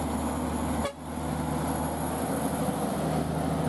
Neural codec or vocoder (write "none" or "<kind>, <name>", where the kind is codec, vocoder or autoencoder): none